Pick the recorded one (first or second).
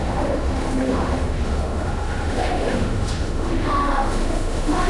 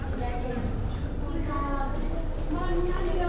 second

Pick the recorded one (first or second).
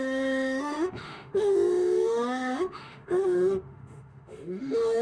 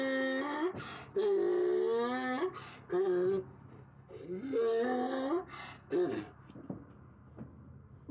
second